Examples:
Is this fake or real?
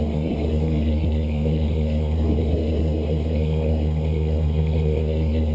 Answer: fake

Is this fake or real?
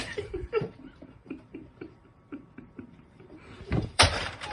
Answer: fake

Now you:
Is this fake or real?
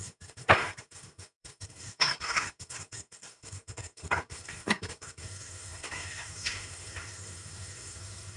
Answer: fake